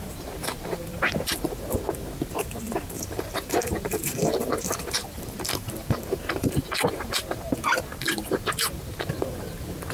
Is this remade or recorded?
remade